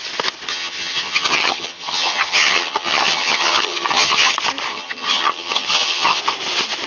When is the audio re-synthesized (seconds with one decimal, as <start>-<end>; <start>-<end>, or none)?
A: 0.5-4.3; 4.7-6.2